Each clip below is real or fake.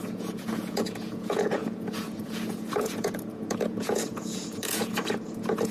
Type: fake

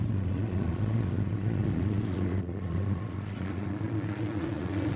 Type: fake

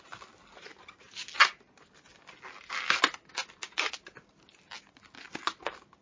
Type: real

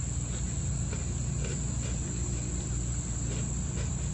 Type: real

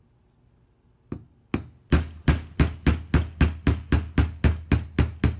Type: real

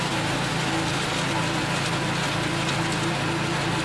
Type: real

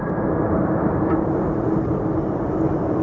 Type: real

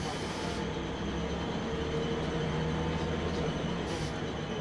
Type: real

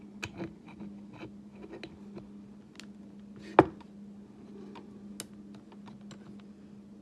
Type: real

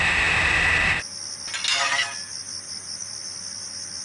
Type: real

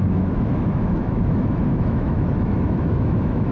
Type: fake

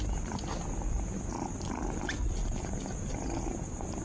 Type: real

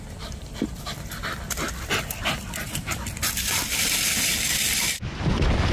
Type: fake